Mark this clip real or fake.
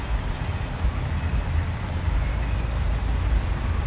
real